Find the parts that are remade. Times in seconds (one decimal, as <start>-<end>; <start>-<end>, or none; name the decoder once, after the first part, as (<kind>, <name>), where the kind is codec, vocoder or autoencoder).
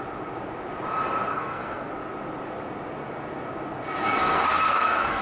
1.3-1.9 (codec, SNAC); 4.0-5.2